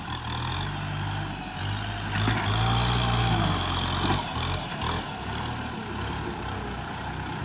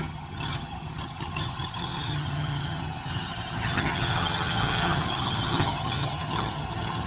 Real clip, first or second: first